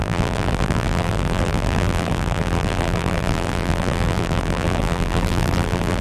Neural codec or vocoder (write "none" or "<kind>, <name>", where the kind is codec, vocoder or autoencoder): vocoder, BigVGAN v2